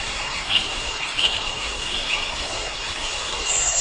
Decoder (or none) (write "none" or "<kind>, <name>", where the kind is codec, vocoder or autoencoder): codec, SNAC